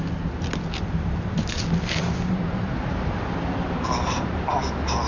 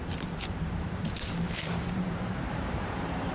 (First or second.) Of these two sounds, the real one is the first